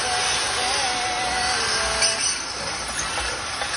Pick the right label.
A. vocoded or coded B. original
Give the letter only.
B